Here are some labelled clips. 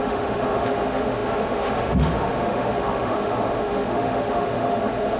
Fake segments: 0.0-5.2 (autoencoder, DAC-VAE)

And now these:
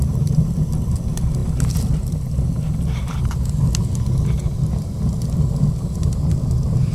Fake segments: none

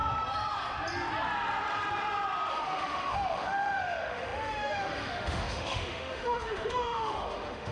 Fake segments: 2.5-7.7 (autoencoder, DAC-VAE)

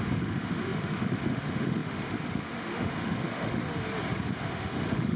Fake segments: 0.0-3.6 (autoencoder, DAC-VAE); 4.4-5.2

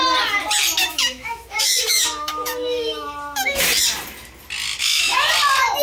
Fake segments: 0.8-3.7 (autoencoder, DAC-VAE); 4.8-5.3

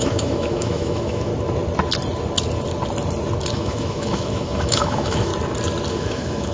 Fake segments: 0.0-1.3 (autoencoder, DAC-VAE); 3.5-5.3; 5.9-6.5

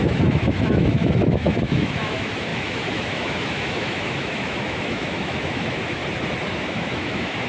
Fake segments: 0.0-6.0 (autoencoder, DAC-VAE); 6.6-7.5

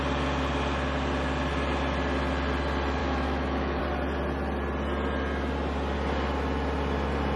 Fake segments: 3.0-3.8 (autoencoder, DAC-VAE)